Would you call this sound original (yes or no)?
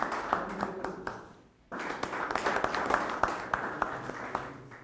yes